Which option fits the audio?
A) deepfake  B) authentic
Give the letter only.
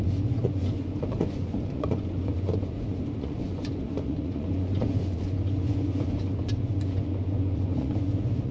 A